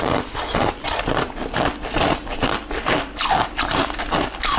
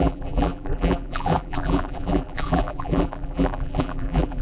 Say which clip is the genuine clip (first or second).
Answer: first